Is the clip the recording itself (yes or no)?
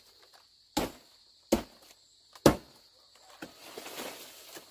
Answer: yes